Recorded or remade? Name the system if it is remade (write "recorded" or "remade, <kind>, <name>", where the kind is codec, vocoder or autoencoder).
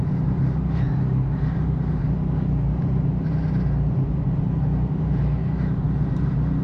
recorded